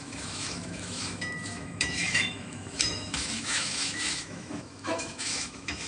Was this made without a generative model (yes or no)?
no